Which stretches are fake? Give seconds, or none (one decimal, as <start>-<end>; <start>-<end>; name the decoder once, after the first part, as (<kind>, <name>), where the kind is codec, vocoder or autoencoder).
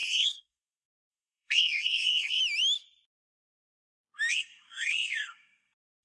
0.0-2.4 (codec, SNAC); 4.3-6.0